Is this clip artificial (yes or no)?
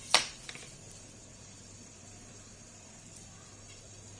yes